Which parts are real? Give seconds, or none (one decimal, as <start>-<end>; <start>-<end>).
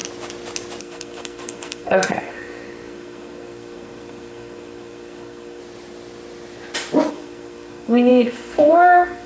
0.0-0.8; 5.6-7.1